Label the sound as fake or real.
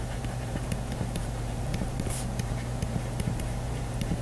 fake